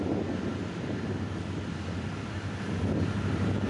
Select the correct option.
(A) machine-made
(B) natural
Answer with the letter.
B